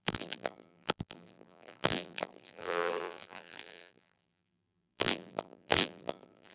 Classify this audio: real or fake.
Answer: fake